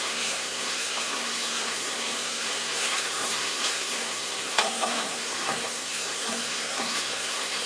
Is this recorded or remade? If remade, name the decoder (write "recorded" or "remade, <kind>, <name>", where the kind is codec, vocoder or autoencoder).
remade, codec, SNAC